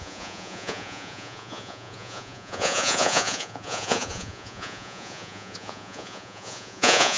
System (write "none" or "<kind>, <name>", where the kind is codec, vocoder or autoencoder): vocoder, Vocos